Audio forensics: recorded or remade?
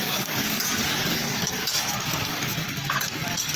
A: remade